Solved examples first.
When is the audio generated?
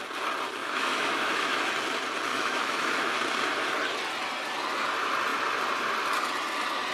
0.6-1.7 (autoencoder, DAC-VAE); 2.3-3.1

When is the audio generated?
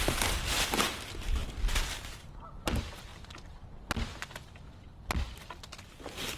0.0-1.4 (vocoder, BigVGAN v2); 2.1-3.1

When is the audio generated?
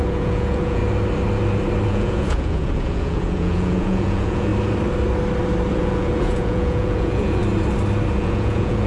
0.0-0.8 (vocoder, Vocos); 1.9-4.5; 5.7-7.4; 8.1-8.9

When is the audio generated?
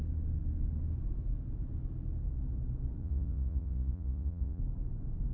3.0-4.6 (vocoder, Vocos)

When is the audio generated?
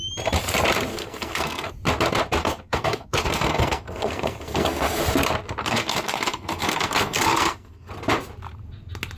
0.9-1.7 (codec, SNAC); 2.4-5.0; 5.6-7.9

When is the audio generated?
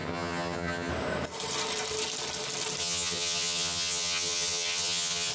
0.0-0.9 (vocoder, HiFi-GAN); 2.8-5.3